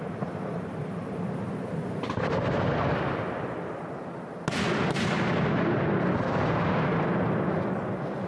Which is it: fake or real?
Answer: real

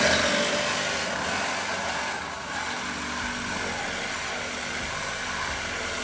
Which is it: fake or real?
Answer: real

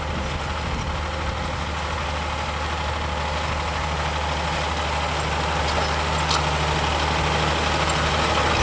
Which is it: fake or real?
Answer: real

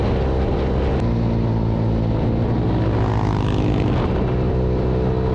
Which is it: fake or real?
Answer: real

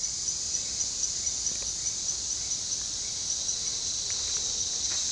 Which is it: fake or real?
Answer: real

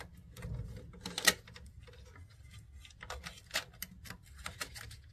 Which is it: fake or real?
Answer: real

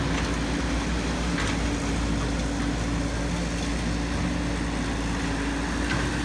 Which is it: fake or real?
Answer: real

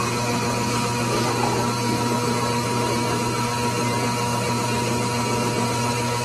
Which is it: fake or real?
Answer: real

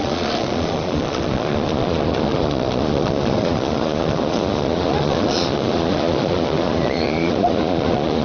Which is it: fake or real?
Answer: fake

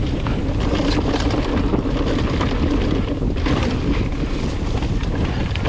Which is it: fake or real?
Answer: real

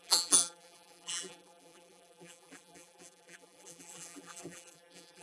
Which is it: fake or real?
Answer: fake